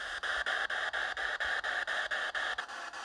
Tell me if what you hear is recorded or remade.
recorded